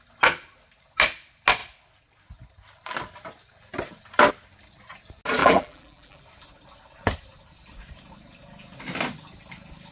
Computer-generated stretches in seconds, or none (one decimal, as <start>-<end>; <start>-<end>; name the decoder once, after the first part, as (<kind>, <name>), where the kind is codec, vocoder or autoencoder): 5.4-6.2 (vocoder, BigVGAN v2)